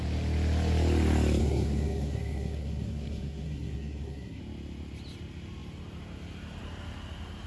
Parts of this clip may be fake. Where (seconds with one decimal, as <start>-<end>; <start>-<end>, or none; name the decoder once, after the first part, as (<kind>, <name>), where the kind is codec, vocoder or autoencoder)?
1.4-4.4 (codec, SNAC)